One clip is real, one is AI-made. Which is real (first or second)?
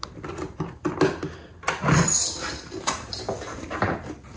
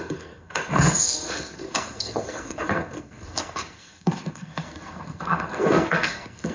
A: first